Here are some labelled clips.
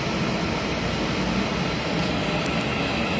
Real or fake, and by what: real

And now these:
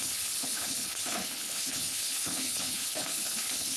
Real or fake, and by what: fake, codec, HILCodec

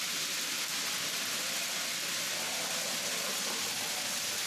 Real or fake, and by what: real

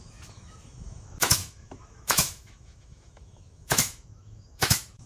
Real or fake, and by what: fake, autoencoder, DAC-VAE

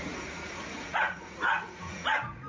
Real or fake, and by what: fake, vocoder, Vocos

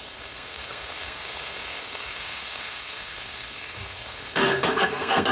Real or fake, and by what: fake, codec, SNAC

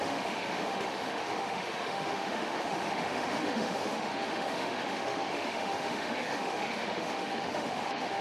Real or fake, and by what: fake, autoencoder, DAC-VAE